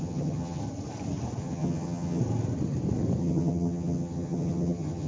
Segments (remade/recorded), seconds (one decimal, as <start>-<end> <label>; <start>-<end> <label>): 0.0-0.6 remade; 0.6-1.4 recorded; 1.4-2.2 remade; 2.2-3.2 recorded; 3.2-5.1 remade